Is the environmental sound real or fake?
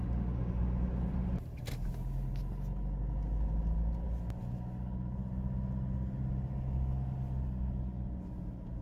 real